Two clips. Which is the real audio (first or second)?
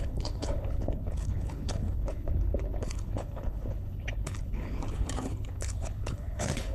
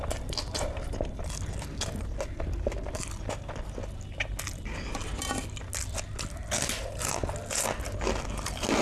second